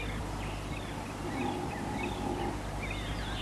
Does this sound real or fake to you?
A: real